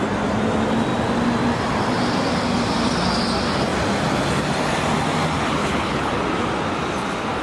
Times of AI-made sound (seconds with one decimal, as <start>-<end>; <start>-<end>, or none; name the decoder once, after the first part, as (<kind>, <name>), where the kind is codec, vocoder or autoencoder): 5.6-6.1 (codec, HILCodec)